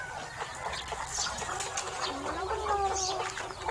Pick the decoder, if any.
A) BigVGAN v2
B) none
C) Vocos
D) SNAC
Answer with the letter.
B